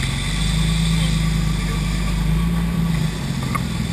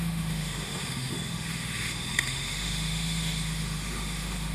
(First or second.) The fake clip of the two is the second